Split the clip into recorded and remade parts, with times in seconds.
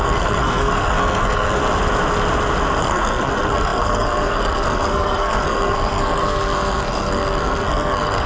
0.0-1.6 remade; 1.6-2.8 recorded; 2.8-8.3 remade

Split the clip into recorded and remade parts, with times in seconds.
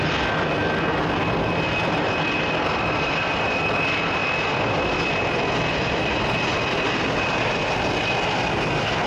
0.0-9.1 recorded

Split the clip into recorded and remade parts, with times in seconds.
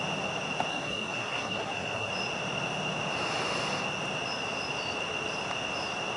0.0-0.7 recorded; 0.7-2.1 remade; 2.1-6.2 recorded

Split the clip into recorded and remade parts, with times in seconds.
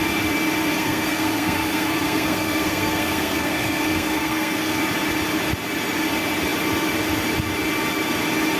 0.0-0.7 recorded; 0.7-4.8 remade; 4.8-8.6 recorded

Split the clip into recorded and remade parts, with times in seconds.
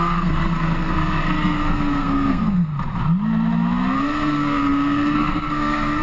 0.0-2.7 remade; 2.7-4.0 recorded; 4.0-6.0 remade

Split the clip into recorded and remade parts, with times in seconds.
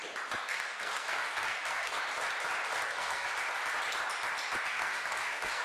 0.0-0.4 recorded; 0.4-2.0 remade; 2.0-2.7 recorded; 2.7-3.3 remade; 3.3-4.7 recorded; 4.7-5.6 remade